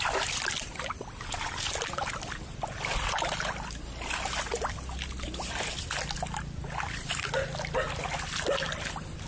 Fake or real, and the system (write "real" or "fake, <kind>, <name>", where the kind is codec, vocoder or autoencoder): real